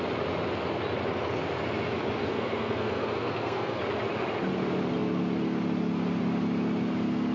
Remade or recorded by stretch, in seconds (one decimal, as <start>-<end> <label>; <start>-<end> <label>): 0.0-2.2 recorded; 2.2-3.8 remade; 3.8-7.3 recorded